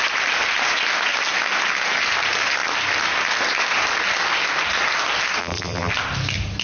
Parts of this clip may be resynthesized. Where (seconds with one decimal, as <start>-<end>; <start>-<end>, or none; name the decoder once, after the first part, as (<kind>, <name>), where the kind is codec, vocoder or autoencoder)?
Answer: 5.4-5.9 (vocoder, BigVGAN v2)